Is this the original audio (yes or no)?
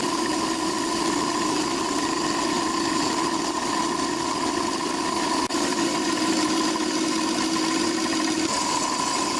yes